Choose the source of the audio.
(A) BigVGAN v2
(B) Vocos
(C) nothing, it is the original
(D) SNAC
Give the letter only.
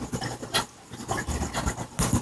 C